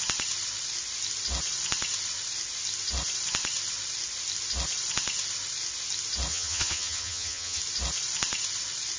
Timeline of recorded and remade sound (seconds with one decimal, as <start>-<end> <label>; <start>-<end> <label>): 0.0-6.3 recorded; 6.3-7.6 remade; 7.6-9.0 recorded